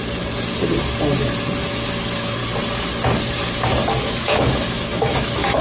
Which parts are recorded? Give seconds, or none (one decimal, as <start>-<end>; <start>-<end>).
0.0-1.7; 2.4-4.0

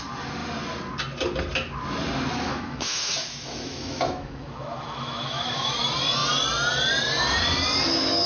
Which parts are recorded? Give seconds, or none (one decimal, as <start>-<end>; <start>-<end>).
0.0-2.3; 5.7-8.3

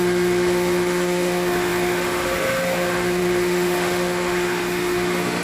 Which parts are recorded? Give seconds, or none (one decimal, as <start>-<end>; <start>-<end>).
none

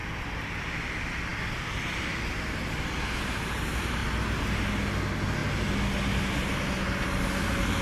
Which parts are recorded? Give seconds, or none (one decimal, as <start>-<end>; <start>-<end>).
0.0-7.8

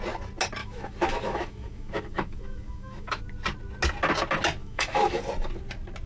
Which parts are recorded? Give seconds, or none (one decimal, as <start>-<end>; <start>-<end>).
0.0-0.6; 3.2-4.6; 5.2-6.1

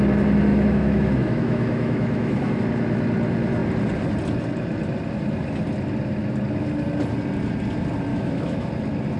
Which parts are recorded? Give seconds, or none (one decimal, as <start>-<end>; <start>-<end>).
0.0-0.5; 2.6-8.1; 8.7-9.2

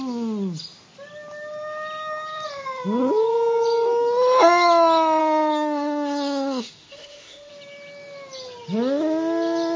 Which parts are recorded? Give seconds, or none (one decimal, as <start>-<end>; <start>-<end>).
0.0-5.2; 7.5-9.8

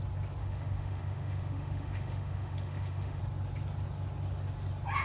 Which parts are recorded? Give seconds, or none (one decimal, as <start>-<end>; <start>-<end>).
0.0-0.4; 3.2-5.0